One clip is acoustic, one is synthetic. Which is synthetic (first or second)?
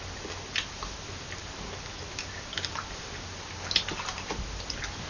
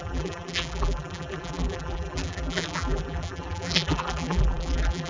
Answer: second